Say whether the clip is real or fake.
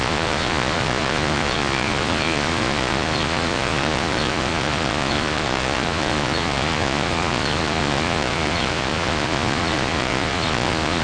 fake